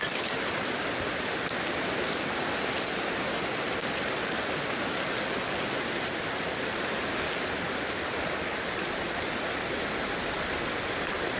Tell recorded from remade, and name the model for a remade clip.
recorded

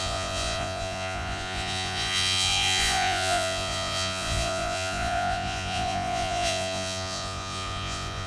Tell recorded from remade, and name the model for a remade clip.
remade, vocoder, Vocos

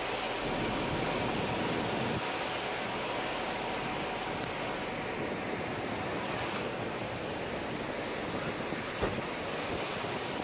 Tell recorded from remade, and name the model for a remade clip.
recorded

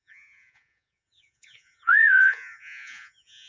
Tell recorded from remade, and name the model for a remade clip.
remade, vocoder, Vocos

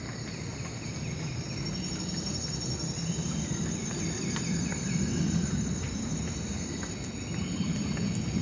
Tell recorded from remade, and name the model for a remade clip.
recorded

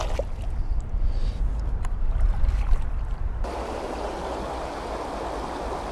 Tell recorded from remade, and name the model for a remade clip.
recorded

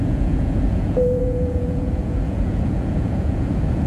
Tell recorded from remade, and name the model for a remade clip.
remade, vocoder, Vocos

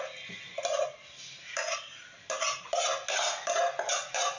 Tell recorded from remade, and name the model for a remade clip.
recorded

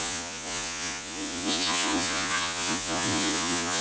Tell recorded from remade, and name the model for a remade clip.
remade, vocoder, Vocos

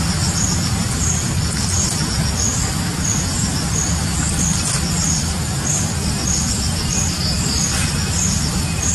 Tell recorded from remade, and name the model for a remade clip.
recorded